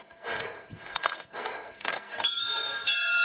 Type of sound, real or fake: fake